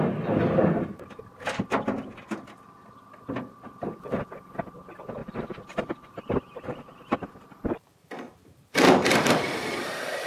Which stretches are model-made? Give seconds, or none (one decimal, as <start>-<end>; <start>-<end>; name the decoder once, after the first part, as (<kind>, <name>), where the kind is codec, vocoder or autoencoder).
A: 0.4-1.2 (vocoder, BigVGAN v2); 5.2-10.3